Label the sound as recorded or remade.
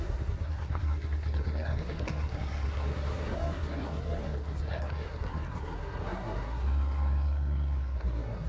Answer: remade